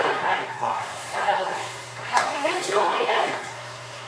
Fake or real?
fake